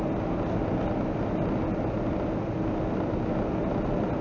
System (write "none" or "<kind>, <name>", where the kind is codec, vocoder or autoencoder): none